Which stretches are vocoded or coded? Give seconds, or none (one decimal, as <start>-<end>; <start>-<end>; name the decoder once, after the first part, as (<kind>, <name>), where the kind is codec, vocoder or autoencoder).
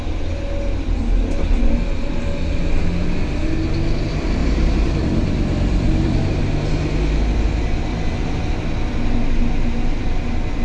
4.4-6.4 (vocoder, BigVGAN v2); 7.9-8.5